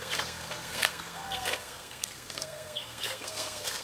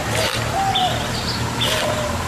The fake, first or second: first